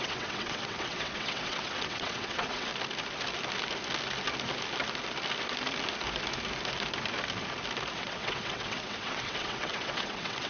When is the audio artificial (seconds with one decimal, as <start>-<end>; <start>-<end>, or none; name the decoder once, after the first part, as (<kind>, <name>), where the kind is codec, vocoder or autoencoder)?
0.0-2.7 (vocoder, WaveNeXt); 7.9-10.5